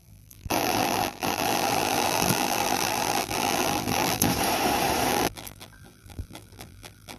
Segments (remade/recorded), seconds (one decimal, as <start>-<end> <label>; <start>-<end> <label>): 0.0-4.3 remade; 4.3-5.1 recorded; 5.1-7.2 remade